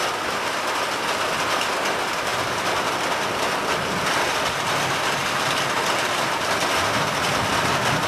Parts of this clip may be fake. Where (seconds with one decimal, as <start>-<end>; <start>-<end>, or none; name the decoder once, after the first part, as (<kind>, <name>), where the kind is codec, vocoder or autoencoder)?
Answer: none